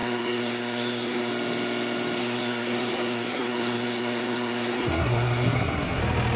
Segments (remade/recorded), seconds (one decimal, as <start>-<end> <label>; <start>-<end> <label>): 0.0-1.3 remade; 1.3-2.2 recorded; 2.2-6.0 remade; 6.0-6.4 recorded